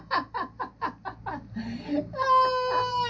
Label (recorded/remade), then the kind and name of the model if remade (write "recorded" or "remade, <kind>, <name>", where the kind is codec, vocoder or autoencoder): recorded